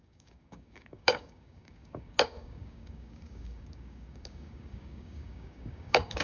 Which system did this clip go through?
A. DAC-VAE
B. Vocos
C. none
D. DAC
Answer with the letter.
D